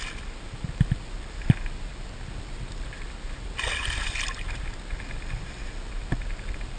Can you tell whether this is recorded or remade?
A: recorded